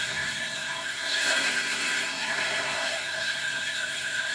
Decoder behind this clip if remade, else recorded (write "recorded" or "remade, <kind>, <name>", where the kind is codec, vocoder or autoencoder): remade, codec, SNAC